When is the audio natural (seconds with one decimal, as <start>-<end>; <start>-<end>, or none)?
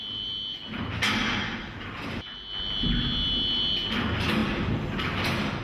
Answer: 0.0-5.6